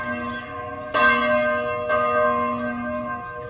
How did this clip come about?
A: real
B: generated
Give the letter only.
A